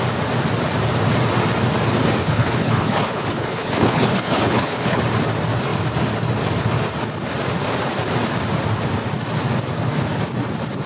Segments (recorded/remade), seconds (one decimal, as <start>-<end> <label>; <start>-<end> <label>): 0.0-2.2 recorded; 2.2-5.0 remade; 5.0-10.9 recorded